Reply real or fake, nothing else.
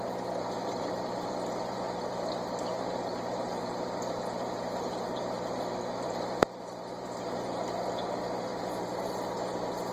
fake